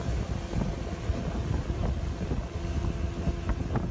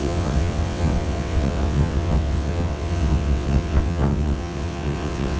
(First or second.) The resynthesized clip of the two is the second